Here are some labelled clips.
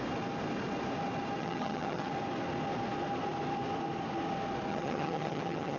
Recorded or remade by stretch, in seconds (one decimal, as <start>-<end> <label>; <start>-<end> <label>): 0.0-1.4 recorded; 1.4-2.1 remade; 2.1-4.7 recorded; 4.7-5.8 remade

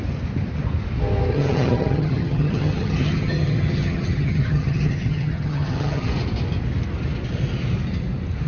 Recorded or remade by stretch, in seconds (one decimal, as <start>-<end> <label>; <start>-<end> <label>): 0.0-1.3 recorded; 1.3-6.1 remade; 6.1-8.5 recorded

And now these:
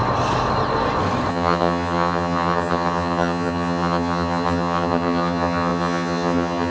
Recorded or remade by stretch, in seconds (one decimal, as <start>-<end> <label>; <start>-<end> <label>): 0.0-1.3 recorded; 1.3-6.7 remade

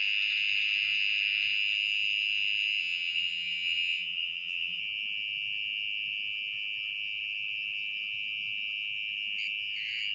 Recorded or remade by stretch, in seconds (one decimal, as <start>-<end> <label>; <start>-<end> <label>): 0.0-2.8 recorded; 2.8-4.8 remade; 4.8-10.1 recorded

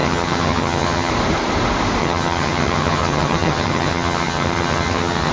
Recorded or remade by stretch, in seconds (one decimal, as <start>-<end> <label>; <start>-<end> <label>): 0.0-1.1 remade; 1.1-2.0 recorded; 2.0-5.3 remade

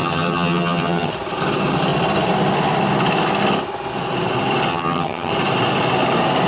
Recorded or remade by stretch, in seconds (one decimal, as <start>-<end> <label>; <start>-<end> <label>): 0.0-1.1 remade; 1.1-4.7 recorded; 4.7-5.3 remade; 5.3-6.5 recorded

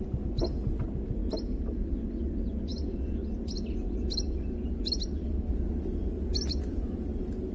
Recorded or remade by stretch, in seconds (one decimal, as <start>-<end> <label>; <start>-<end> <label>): 0.0-7.5 recorded